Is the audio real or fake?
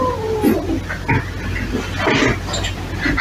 real